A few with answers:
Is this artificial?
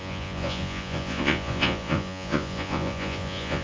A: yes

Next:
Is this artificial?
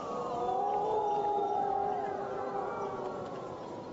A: yes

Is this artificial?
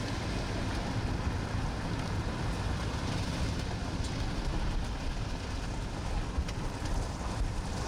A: no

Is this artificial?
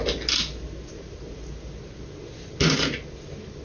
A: no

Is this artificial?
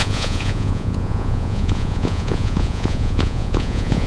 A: yes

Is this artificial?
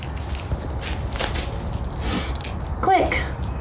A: no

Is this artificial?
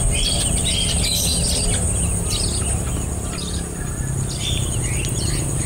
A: no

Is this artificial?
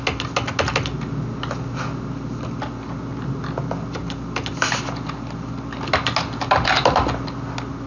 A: no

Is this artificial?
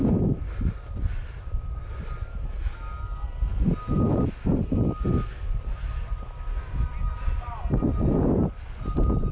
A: no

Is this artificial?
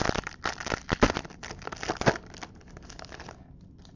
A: no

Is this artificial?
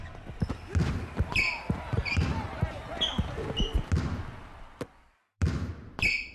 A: no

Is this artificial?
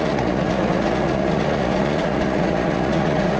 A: yes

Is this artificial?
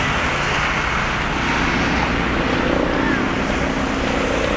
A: no